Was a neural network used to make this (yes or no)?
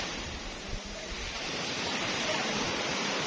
yes